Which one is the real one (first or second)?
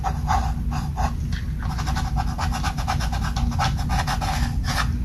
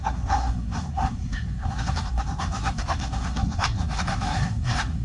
first